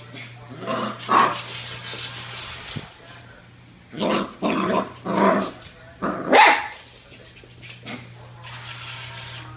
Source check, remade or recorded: recorded